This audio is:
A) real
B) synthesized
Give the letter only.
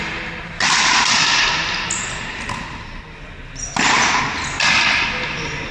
A